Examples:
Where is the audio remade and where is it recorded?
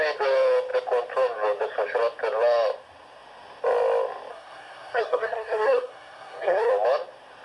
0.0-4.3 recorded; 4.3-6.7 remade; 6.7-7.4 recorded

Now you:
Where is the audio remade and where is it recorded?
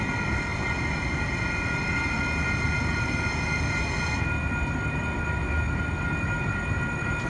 0.0-7.3 recorded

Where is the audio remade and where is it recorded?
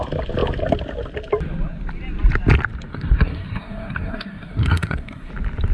0.0-2.9 recorded; 2.9-5.3 remade; 5.3-5.7 recorded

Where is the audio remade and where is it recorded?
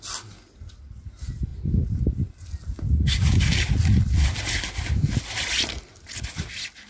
0.0-6.9 recorded